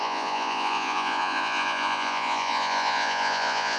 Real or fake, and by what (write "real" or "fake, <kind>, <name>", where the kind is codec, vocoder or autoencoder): fake, vocoder, Vocos